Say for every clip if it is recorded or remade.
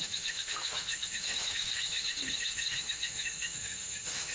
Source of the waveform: remade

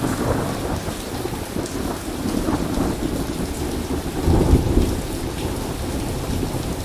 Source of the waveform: recorded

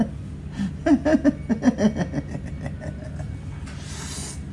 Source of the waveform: recorded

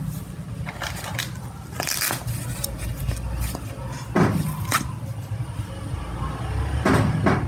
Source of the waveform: recorded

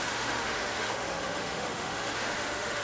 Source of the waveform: remade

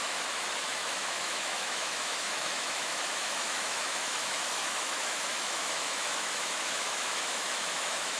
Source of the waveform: remade